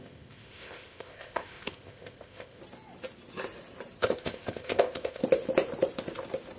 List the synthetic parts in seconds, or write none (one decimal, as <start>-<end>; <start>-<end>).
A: 0.0-2.6; 4.0-5.2